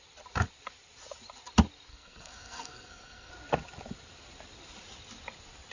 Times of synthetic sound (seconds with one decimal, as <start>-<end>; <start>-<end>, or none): 1.9-3.3